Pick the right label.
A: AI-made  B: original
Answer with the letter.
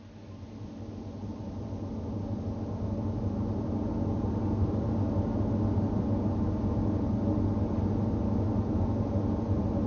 B